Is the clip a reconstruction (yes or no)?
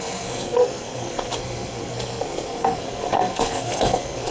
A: yes